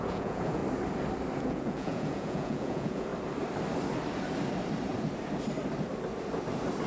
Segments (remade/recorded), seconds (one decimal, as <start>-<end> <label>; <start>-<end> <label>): 0.0-0.6 remade; 0.6-1.4 recorded; 1.4-3.1 remade; 3.1-6.9 recorded